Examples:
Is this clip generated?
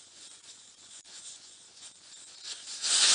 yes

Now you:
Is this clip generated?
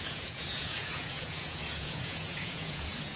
yes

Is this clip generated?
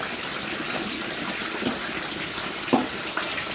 no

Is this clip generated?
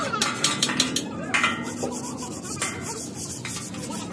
no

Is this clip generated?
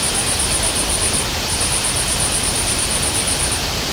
no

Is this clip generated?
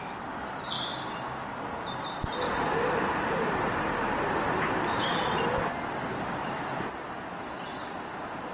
no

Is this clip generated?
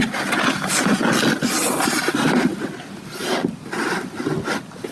no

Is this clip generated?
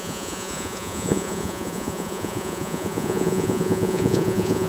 yes